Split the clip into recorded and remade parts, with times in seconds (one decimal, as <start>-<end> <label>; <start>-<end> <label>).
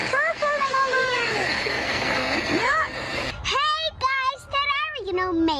0.0-3.3 remade; 3.3-5.6 recorded